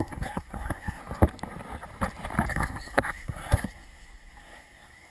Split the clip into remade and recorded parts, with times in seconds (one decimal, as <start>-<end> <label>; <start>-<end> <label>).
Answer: 0.0-1.0 remade; 1.0-2.5 recorded; 2.5-5.1 remade